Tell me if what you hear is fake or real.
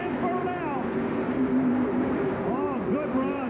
fake